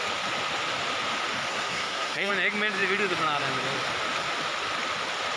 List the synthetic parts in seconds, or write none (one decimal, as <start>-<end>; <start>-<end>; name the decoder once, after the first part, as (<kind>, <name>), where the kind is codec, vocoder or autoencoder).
1.5-2.3 (codec, SNAC)